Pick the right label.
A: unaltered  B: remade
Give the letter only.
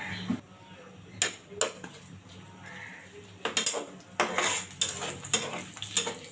A